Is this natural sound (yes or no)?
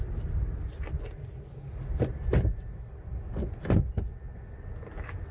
yes